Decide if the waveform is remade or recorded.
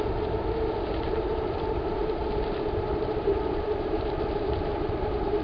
remade